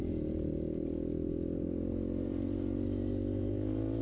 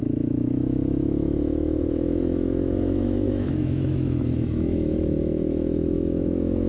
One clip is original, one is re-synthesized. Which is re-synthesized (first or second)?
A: second